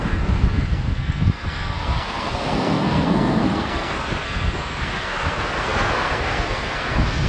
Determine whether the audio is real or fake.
fake